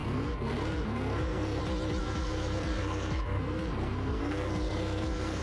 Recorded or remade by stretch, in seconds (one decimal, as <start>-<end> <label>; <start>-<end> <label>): 0.0-1.6 remade; 1.6-2.0 recorded; 2.0-5.4 remade